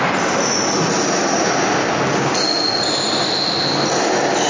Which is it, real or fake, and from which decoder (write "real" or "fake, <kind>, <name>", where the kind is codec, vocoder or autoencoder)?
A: real